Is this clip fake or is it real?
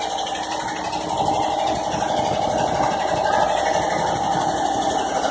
real